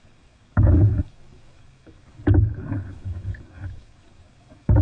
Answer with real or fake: fake